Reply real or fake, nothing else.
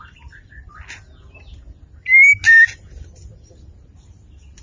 real